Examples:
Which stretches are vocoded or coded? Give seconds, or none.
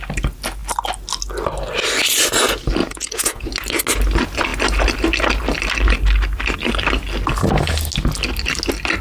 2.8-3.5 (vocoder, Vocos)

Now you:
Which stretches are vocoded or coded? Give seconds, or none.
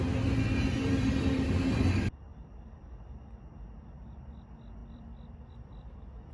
2.3-2.9 (vocoder, BigVGAN v2); 4.8-5.5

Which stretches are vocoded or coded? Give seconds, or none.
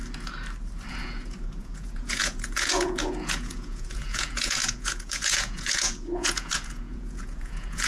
0.9-7.9 (vocoder, Vocos)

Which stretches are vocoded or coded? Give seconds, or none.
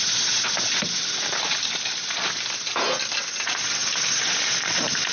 3.8-5.1 (vocoder, BigVGAN v2)